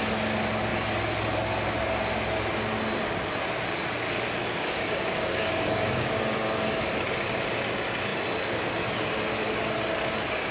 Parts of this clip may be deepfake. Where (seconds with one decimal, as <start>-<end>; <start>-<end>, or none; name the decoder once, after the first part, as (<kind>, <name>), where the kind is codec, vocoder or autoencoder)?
4.4-6.9 (codec, DAC)